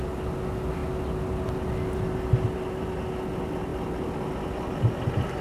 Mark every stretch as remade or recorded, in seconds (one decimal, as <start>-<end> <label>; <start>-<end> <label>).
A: 0.0-5.4 recorded